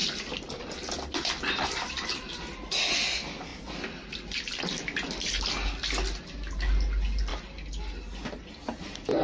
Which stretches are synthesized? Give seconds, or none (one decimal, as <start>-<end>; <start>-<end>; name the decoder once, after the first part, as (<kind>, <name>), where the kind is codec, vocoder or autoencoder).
none